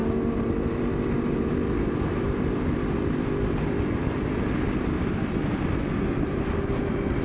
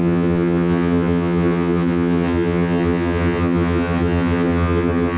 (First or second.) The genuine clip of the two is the first